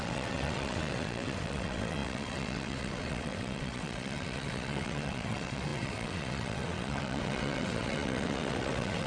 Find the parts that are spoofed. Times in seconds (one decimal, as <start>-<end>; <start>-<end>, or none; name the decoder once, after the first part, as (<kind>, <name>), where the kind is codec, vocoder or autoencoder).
0.0-9.1 (vocoder, WaveNeXt)